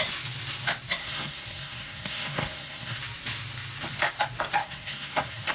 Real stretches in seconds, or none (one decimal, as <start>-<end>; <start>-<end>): 0.0-1.0; 3.0-4.6